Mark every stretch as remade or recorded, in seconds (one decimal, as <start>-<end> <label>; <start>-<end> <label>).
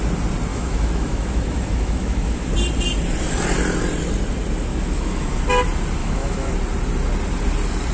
0.0-0.5 recorded; 0.5-2.5 remade; 2.5-4.7 recorded; 4.7-5.4 remade; 5.4-6.0 recorded; 6.0-6.5 remade; 6.5-7.9 recorded